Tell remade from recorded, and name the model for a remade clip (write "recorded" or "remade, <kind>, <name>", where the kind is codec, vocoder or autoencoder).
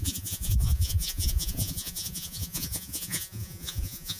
remade, vocoder, Vocos